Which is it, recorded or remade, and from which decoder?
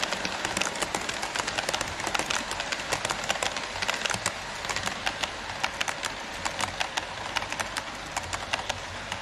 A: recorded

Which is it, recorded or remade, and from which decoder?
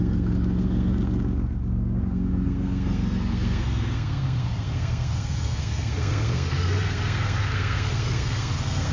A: remade, codec, SNAC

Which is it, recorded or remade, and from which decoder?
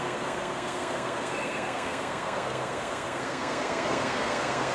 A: remade, codec, SNAC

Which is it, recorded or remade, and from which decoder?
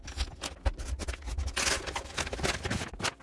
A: recorded